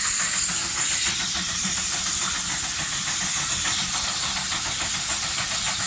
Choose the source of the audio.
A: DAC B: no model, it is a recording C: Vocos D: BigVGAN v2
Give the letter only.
B